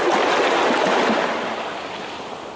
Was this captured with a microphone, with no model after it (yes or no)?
yes